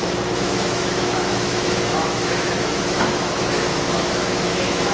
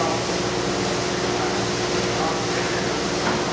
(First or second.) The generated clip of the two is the first